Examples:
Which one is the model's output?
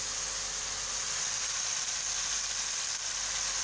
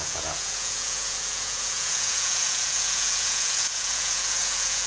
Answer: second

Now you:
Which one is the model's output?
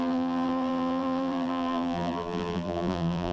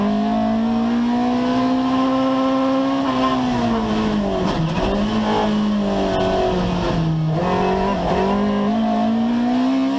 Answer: first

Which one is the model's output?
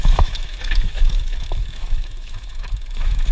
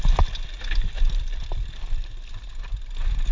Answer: first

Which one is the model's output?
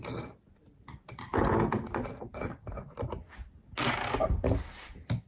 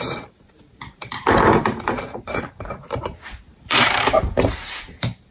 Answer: second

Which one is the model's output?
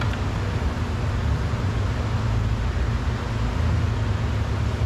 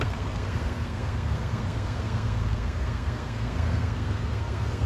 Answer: second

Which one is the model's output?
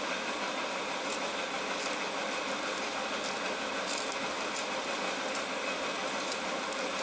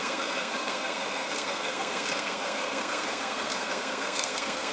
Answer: second